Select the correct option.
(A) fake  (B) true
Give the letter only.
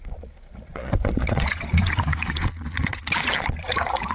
A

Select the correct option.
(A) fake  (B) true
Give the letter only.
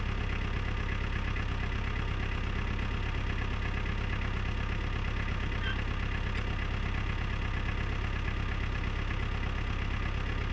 B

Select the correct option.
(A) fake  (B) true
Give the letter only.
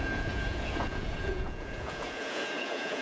A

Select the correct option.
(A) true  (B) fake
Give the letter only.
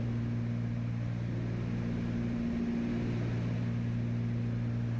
A